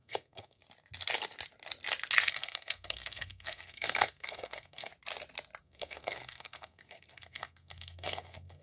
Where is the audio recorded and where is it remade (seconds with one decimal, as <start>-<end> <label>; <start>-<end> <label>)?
0.0-0.6 remade; 0.6-2.3 recorded; 2.3-4.9 remade; 4.9-5.6 recorded; 5.6-8.6 remade